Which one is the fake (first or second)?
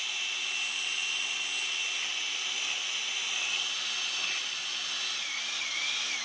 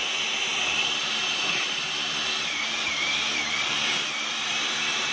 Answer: second